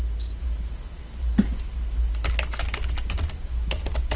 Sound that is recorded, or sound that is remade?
recorded